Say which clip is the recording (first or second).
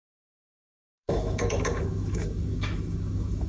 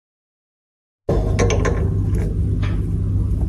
second